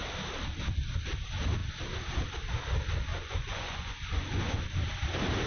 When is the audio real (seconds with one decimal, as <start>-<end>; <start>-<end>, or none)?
0.0-3.1; 4.6-5.5